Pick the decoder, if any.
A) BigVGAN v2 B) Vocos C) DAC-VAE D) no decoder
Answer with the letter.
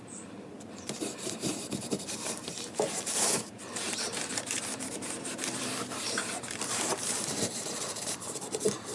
A